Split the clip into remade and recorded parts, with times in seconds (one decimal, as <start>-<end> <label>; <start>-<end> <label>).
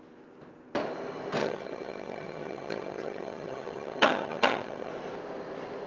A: 0.0-1.4 recorded; 1.4-4.9 remade; 4.9-5.9 recorded